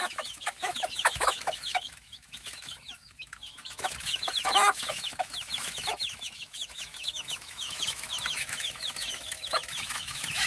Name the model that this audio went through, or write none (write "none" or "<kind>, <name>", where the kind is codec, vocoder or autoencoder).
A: autoencoder, DAC-VAE